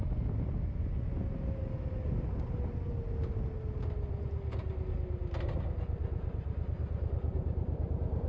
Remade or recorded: recorded